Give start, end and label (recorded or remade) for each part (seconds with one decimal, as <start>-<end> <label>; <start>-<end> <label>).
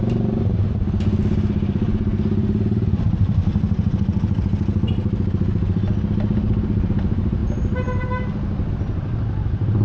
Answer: 0.0-9.8 recorded